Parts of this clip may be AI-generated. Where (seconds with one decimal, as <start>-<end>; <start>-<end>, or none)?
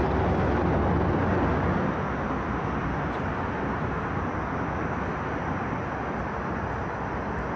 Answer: none